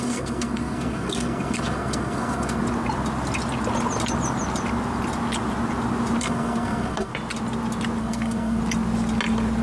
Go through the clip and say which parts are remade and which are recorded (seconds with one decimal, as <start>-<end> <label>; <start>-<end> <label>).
0.0-2.6 remade; 2.6-6.2 recorded; 6.2-7.1 remade; 7.1-8.0 recorded; 8.0-8.6 remade; 8.6-9.6 recorded